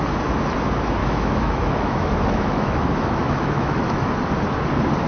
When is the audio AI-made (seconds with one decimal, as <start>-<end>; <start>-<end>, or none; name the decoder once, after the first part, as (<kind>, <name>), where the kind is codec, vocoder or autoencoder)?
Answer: 1.0-4.1 (autoencoder, DAC-VAE)